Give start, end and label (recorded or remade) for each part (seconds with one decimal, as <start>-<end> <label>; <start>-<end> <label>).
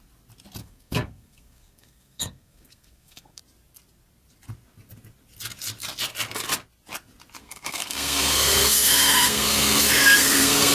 0.0-0.6 recorded; 0.6-3.4 remade; 3.4-7.4 recorded; 7.4-10.7 remade